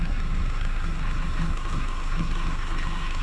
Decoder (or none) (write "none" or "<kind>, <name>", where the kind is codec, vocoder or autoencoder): codec, SNAC